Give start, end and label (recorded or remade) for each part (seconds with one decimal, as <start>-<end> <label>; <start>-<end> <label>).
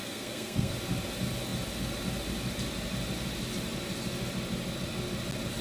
0.0-0.7 remade; 0.7-5.6 recorded